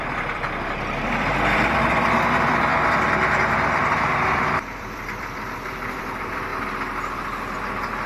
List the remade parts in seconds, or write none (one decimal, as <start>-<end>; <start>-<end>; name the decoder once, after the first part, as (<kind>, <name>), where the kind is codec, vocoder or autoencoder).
0.0-6.5 (vocoder, BigVGAN v2)